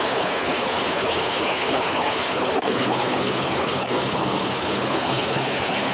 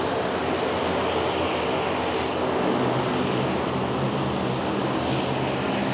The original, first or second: second